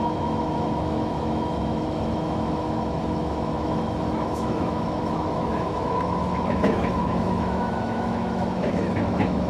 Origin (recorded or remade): remade